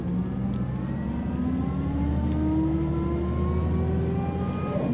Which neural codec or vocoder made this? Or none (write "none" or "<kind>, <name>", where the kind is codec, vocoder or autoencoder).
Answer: none